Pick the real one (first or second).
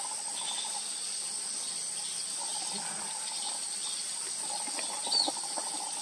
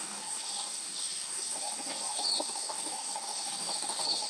first